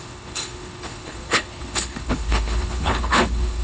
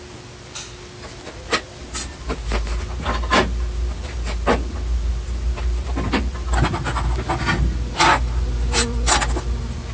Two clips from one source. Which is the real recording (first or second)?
second